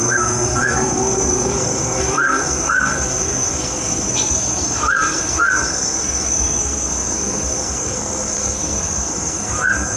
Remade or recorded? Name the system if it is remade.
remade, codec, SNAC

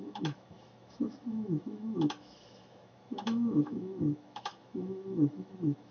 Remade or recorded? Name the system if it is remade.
remade, autoencoder, DAC-VAE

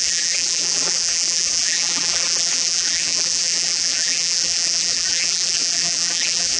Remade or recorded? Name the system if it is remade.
remade, vocoder, BigVGAN v2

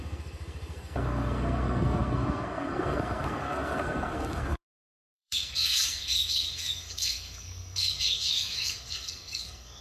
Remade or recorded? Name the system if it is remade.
remade, codec, SNAC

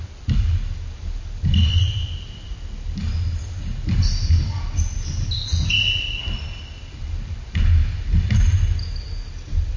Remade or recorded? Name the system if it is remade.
recorded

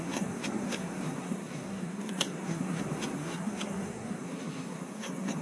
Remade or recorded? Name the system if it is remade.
remade, codec, SNAC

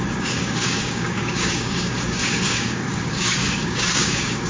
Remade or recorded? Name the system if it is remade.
remade, codec, DAC